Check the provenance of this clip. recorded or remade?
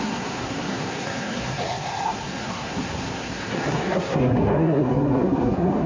remade